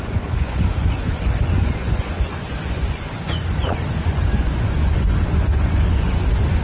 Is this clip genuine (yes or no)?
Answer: no